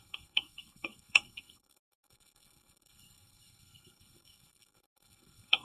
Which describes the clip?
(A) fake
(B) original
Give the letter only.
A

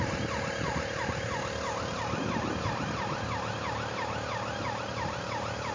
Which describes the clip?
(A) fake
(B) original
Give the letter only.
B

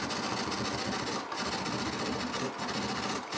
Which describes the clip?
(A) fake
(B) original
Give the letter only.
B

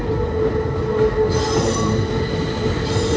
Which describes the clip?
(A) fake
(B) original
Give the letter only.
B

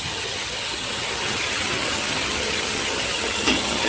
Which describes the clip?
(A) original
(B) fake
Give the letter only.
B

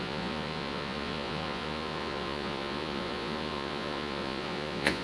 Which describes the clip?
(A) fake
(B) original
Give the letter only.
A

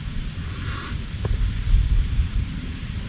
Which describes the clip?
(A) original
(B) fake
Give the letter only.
B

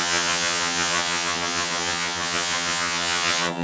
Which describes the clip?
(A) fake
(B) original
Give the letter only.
A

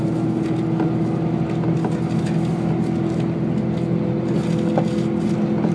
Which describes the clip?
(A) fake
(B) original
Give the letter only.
B